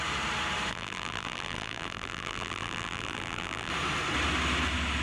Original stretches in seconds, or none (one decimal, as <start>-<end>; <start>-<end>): 0.0-0.7; 3.7-5.0